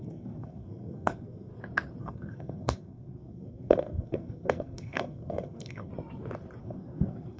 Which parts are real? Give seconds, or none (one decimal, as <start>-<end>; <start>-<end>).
1.5-2.0; 5.9-6.6